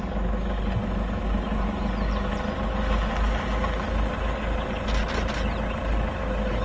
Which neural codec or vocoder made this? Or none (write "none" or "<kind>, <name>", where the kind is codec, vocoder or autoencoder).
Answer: none